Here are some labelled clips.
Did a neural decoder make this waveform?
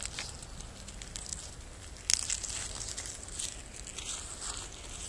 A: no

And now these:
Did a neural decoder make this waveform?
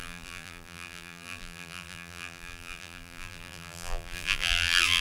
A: yes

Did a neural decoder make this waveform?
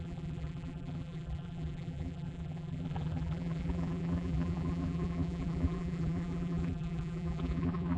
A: yes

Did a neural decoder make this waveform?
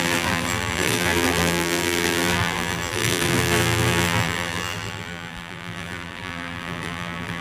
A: yes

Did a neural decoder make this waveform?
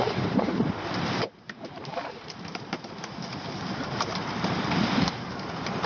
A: yes